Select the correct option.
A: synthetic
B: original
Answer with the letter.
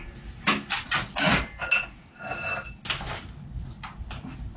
B